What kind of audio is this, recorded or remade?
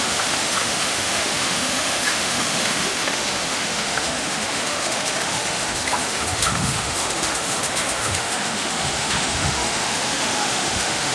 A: remade